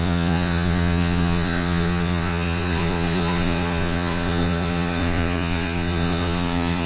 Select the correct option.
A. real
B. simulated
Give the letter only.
B